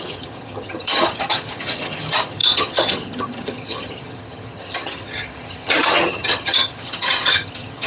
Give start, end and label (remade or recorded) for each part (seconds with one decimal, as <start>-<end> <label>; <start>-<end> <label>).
0.0-7.9 remade